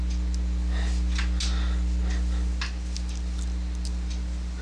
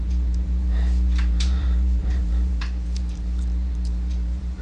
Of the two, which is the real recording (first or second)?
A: first